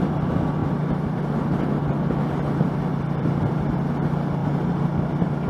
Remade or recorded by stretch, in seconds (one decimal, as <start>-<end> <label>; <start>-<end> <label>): 0.0-0.6 recorded; 0.6-1.2 remade; 1.2-2.9 recorded; 2.9-3.8 remade; 3.8-5.5 recorded